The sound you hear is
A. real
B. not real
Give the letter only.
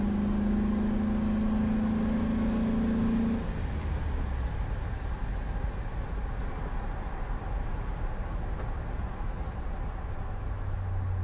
A